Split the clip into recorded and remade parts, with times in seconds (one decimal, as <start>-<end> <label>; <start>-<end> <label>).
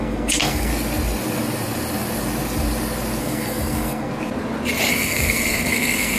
0.0-0.7 remade; 0.7-3.2 recorded; 3.2-4.1 remade; 4.1-4.9 recorded; 4.9-6.2 remade